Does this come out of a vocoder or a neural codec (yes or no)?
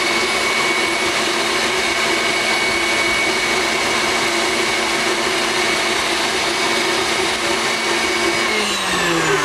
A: no